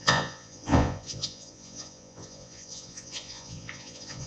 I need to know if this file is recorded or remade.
remade